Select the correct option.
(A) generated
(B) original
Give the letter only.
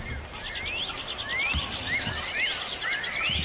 B